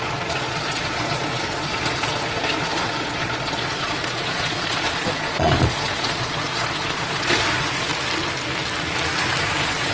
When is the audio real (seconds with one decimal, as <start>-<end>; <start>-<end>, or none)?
7.9-9.4